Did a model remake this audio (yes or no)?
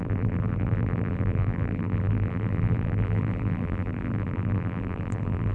yes